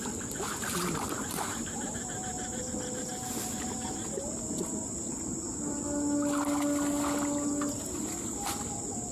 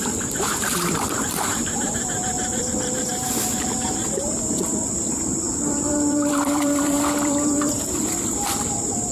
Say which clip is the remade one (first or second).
second